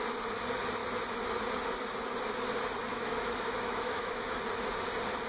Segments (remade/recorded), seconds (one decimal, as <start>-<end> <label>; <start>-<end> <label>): 0.0-2.9 recorded; 2.9-4.4 remade; 4.4-5.3 recorded

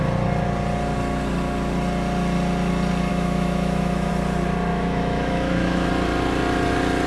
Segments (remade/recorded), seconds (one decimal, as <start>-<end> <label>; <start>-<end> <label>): 0.0-3.1 recorded; 3.1-4.1 remade; 4.1-4.7 recorded; 4.7-5.9 remade; 5.9-7.1 recorded

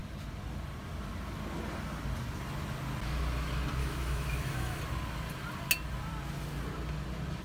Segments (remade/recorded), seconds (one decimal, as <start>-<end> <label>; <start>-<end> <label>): 0.0-3.8 recorded; 3.8-4.8 remade; 4.8-7.4 recorded

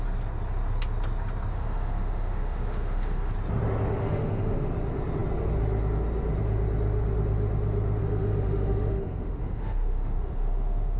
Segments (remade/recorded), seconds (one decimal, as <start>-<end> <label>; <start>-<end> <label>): 0.0-1.5 recorded; 1.5-3.3 remade; 3.3-4.0 recorded; 4.0-4.7 remade; 4.7-8.0 recorded; 8.0-11.0 remade

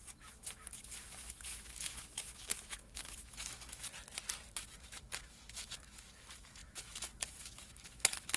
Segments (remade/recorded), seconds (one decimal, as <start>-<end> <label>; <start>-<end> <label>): 0.0-3.9 remade; 3.9-4.5 recorded; 4.5-8.4 remade

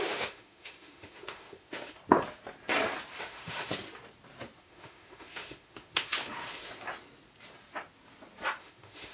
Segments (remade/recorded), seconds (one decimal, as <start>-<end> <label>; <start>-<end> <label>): 0.0-2.0 remade; 2.0-3.2 recorded; 3.2-3.7 remade; 3.7-4.6 recorded; 4.6-6.7 remade; 6.7-8.6 recorded; 8.6-9.1 remade